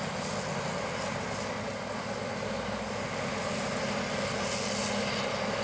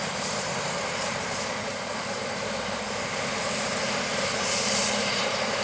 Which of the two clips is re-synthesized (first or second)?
second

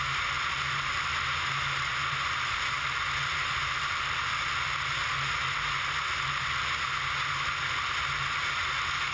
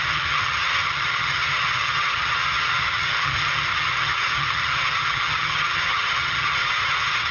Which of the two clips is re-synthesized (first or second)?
second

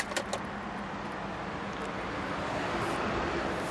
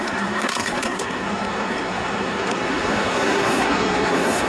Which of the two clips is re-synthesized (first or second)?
second